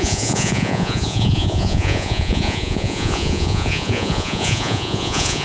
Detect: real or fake fake